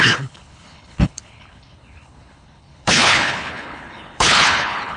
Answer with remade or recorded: remade